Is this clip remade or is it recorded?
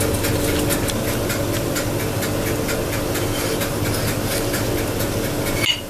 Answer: recorded